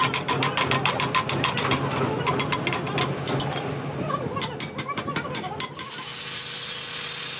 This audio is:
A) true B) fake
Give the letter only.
A